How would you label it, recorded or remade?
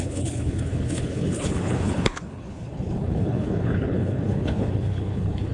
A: remade